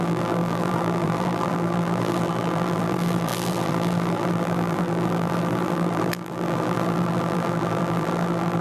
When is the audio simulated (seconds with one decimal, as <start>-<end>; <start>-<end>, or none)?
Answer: 0.0-8.6